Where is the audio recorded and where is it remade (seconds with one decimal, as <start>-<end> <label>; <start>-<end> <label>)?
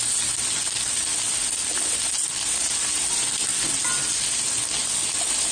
0.0-5.5 recorded